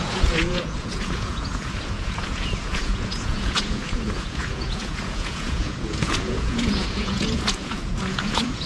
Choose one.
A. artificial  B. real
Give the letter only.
A